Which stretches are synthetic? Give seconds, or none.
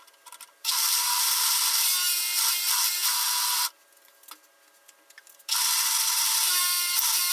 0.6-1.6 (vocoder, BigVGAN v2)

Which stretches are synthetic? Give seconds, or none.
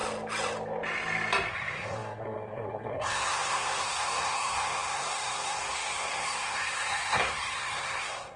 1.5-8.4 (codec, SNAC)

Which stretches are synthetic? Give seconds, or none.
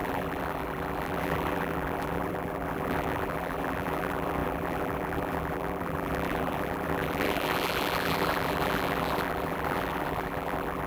0.0-10.9 (vocoder, BigVGAN v2)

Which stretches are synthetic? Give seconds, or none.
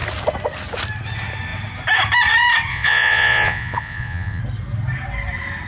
2.7-4.4 (vocoder, Vocos)